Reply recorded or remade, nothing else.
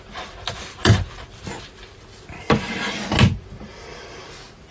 recorded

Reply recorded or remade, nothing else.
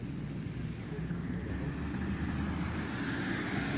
recorded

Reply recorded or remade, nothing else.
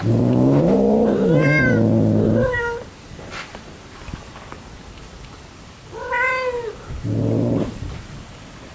recorded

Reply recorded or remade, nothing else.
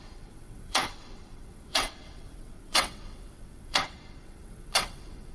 remade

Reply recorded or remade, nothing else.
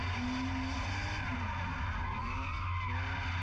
recorded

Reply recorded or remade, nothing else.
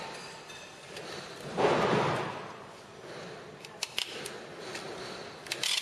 recorded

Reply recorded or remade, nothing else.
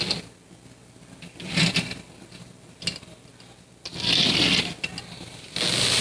recorded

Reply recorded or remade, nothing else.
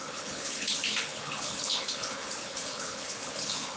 remade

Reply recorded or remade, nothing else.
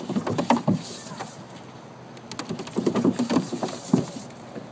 recorded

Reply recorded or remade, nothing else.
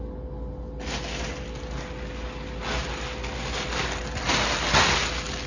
recorded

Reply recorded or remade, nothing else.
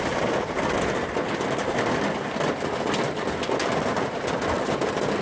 recorded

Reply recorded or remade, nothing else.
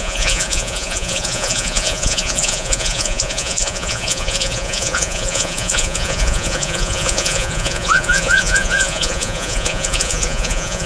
remade